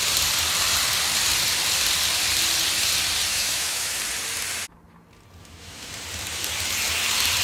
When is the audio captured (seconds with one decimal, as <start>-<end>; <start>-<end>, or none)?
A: 0.0-3.3; 4.0-5.4; 5.9-7.4